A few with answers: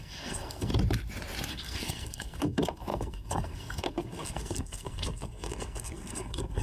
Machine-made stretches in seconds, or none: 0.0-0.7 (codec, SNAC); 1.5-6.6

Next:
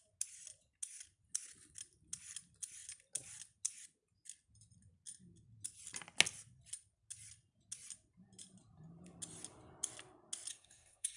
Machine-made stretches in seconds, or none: 10.5-11.2 (codec, SNAC)